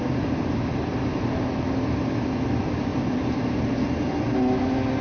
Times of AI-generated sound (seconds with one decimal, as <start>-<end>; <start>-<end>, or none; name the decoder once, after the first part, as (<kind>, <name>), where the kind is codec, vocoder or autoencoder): none